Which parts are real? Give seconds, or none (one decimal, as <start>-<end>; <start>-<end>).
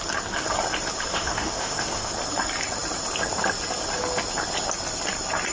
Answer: 0.0-1.1; 2.1-5.5